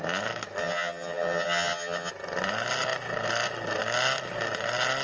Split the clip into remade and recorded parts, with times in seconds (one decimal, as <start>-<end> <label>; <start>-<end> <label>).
0.0-0.6 recorded; 0.6-2.1 remade; 2.1-5.0 recorded